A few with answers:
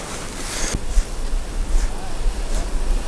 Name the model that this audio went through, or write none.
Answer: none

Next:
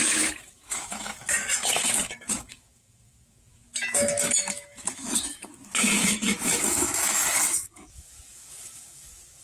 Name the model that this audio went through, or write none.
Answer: autoencoder, DAC-VAE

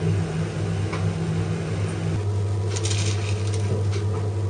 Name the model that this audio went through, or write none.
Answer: none